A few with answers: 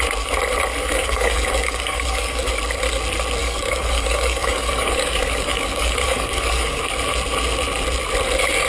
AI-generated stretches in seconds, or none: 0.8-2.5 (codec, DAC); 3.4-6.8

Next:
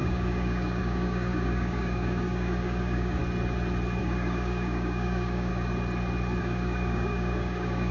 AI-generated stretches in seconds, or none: 0.0-3.2 (codec, DAC); 4.0-5.5; 6.4-7.9

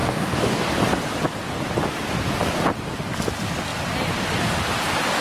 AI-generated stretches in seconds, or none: 0.0-0.7 (codec, DAC)